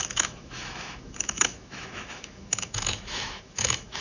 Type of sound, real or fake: fake